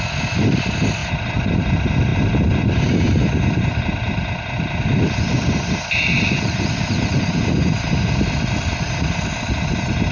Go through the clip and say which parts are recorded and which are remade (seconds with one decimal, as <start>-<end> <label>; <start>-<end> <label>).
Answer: 0.0-10.1 recorded